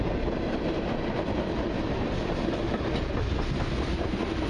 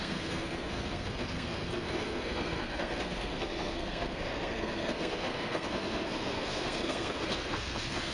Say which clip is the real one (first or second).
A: first